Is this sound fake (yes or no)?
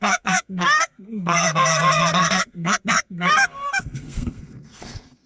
yes